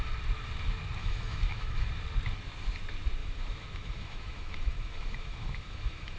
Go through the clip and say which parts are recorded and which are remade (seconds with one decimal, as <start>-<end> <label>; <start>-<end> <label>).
0.0-1.0 recorded; 1.0-1.9 remade; 1.9-3.2 recorded; 3.2-6.2 remade